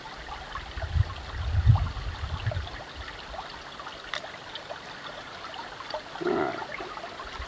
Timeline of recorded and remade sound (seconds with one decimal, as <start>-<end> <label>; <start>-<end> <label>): 0.0-7.5 recorded